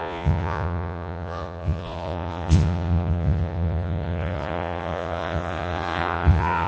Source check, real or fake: fake